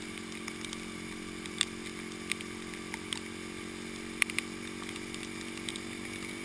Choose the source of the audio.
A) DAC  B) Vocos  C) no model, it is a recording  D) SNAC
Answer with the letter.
C